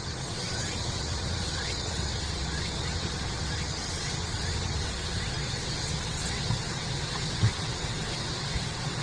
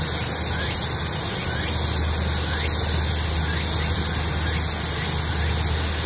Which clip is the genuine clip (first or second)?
second